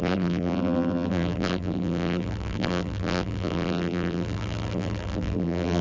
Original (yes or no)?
no